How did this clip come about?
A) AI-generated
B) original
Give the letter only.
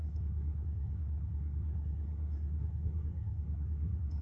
A